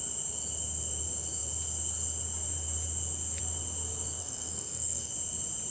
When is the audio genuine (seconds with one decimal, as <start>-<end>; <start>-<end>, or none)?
0.0-4.2; 5.1-5.7